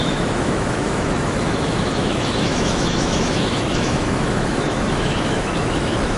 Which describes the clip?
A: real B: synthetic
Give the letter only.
B